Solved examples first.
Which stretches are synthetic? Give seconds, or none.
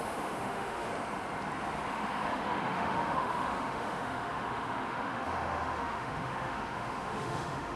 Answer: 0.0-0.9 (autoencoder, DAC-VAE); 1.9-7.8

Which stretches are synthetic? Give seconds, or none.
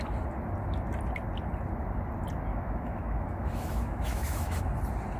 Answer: 2.5-4.6 (autoencoder, DAC-VAE)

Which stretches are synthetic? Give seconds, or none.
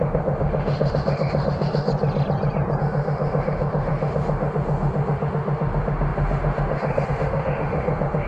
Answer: 0.0-1.9 (autoencoder, DAC-VAE); 2.8-8.3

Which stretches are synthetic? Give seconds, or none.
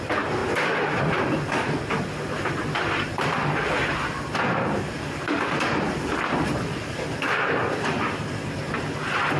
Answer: none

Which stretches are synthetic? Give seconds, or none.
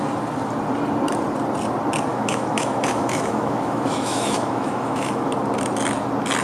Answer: 2.1-5.3 (autoencoder, DAC-VAE)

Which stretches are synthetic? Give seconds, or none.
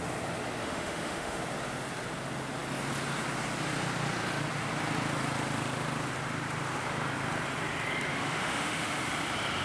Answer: 0.6-1.4 (autoencoder, DAC-VAE); 8.1-9.1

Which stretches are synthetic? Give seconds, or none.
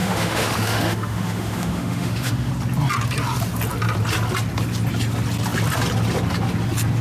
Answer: 0.0-2.5 (autoencoder, DAC-VAE)